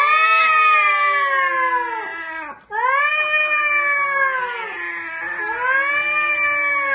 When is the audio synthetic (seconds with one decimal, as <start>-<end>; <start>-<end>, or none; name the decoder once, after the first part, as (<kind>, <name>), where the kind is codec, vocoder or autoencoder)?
none